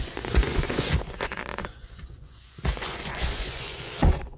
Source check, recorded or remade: remade